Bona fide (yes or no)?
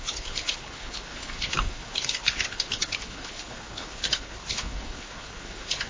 no